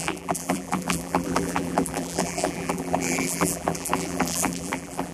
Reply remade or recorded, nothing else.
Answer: remade